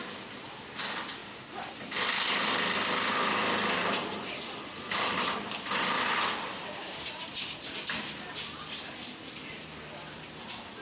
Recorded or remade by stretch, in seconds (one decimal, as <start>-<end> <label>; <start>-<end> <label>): 0.0-10.8 recorded